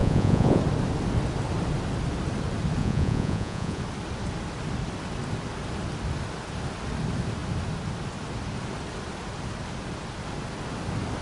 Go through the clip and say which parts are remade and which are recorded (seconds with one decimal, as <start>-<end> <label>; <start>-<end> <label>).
0.0-0.6 remade; 0.6-2.8 recorded; 2.8-3.8 remade; 3.8-11.2 recorded